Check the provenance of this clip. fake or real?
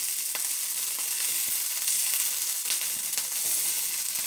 real